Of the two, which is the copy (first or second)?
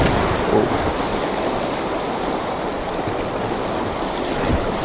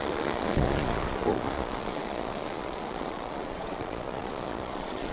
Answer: second